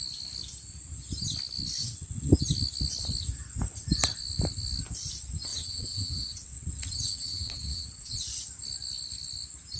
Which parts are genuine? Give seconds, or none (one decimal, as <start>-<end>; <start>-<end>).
0.0-1.8; 2.4-5.5; 8.2-9.8